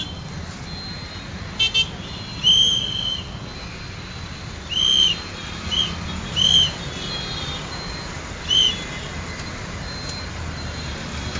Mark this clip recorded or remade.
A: recorded